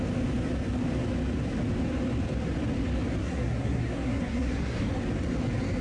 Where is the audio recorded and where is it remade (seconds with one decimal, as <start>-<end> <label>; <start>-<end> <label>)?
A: 0.0-3.2 recorded; 3.2-4.9 remade; 4.9-5.8 recorded